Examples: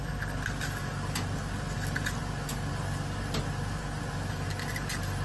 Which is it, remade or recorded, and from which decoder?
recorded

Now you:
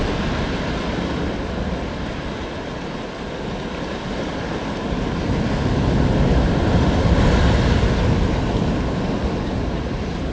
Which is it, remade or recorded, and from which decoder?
recorded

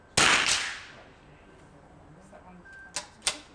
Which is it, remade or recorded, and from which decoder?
recorded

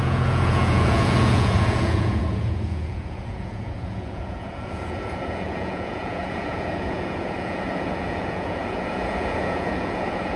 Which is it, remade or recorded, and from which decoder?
remade, vocoder, Vocos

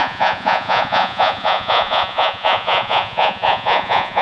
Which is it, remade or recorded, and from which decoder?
remade, vocoder, Vocos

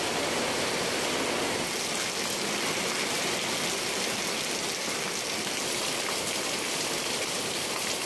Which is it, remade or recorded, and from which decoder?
recorded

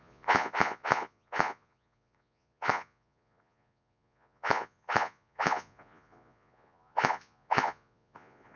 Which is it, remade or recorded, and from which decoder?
remade, vocoder, Vocos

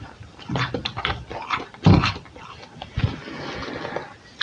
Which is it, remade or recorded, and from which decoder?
recorded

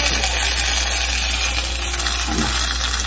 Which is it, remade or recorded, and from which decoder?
recorded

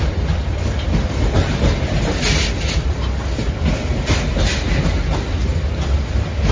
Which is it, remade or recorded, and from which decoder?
recorded